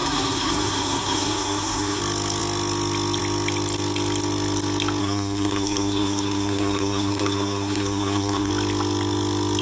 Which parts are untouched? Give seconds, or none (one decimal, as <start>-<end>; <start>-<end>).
2.0-5.0; 8.5-9.6